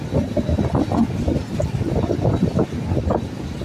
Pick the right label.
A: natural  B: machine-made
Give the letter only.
A